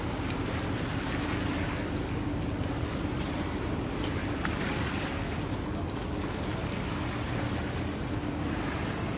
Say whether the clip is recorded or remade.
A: recorded